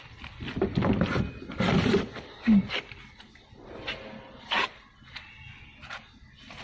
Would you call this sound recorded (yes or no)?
yes